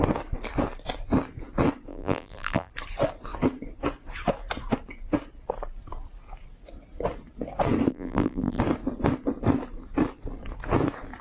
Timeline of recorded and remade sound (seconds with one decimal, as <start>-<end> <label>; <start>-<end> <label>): 0.0-1.9 recorded; 1.9-2.7 remade; 2.7-7.9 recorded; 7.9-8.6 remade; 8.6-11.2 recorded